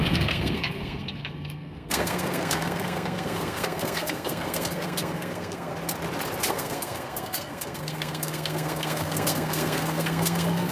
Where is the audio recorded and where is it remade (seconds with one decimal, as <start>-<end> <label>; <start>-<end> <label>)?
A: 0.0-5.7 remade; 5.7-6.5 recorded; 6.5-10.7 remade